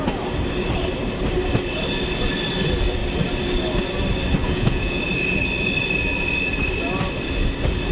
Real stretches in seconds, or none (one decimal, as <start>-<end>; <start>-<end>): 0.0-4.4; 5.0-7.9